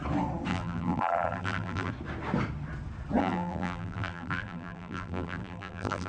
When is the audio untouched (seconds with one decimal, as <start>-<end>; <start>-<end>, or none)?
0.0-0.5; 1.9-3.2